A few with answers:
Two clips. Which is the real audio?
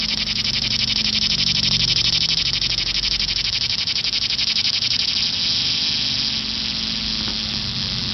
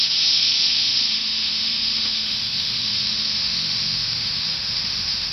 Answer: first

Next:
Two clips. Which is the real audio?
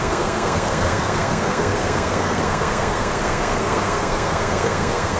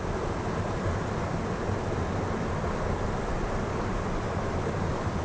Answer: second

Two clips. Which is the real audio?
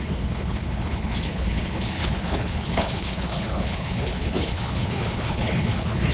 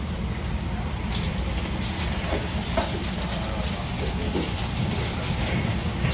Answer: second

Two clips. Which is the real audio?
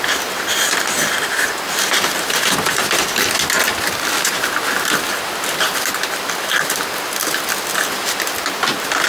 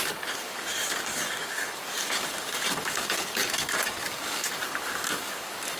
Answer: first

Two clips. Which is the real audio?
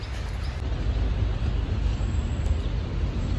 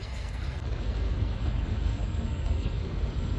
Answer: first